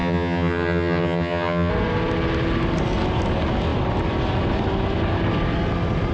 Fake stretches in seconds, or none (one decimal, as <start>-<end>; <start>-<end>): 0.0-1.7